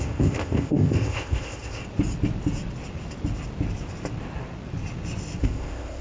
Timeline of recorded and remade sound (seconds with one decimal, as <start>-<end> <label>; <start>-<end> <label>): 0.0-1.8 remade; 1.8-5.4 recorded; 5.4-6.0 remade